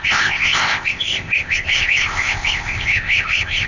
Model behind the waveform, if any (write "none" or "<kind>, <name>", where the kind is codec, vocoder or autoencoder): codec, ZipCodec